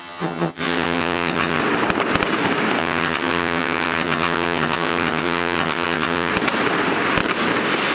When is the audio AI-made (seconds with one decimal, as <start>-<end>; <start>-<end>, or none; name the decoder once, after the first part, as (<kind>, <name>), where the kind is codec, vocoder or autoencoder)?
0.0-1.6 (vocoder, HiFi-GAN); 2.8-6.3